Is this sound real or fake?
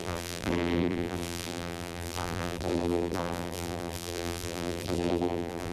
fake